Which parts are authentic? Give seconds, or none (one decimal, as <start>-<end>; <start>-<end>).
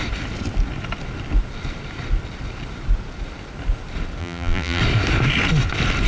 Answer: 0.0-4.2; 4.8-6.1